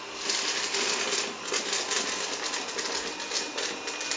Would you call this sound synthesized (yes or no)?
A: no